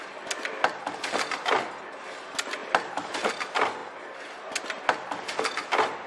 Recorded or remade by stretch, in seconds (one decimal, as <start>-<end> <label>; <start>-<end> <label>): 0.0-2.6 recorded; 2.6-3.3 remade; 3.3-6.1 recorded